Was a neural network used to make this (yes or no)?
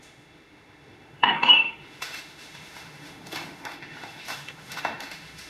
yes